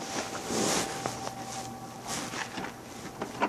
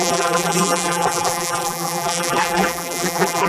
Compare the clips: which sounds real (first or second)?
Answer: first